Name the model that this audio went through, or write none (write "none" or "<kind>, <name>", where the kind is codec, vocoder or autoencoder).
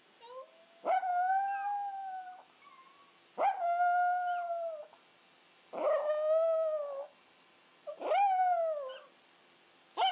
none